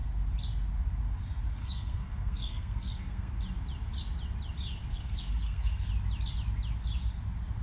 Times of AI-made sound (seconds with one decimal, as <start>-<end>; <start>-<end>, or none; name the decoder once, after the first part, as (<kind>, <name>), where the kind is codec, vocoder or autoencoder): 1.6-3.3 (codec, SNAC); 4.9-5.9